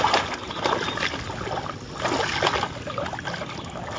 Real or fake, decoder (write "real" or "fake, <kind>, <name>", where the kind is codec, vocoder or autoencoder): real